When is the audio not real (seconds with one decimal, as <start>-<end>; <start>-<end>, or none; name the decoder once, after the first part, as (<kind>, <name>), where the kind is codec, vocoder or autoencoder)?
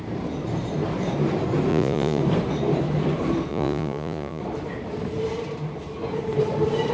1.7-2.2 (vocoder, Vocos); 3.5-4.4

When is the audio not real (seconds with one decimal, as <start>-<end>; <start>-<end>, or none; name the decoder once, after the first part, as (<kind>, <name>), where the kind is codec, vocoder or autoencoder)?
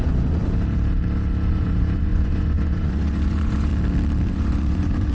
0.0-0.4 (vocoder, Vocos); 1.5-3.7; 4.3-5.1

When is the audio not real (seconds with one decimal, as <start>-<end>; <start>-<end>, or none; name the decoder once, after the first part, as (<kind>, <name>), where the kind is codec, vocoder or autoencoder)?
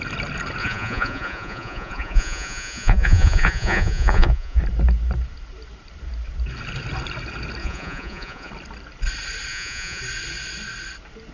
0.6-4.6 (vocoder, Vocos); 7.6-8.5; 9.5-10.0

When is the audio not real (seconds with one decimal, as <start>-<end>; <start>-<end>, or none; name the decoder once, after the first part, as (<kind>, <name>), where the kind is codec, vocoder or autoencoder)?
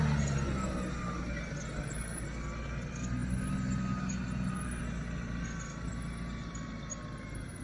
none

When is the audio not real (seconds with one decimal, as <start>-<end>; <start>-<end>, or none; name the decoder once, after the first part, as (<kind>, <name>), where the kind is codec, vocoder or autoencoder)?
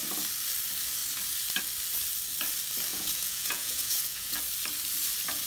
2.9-4.4 (vocoder, Vocos)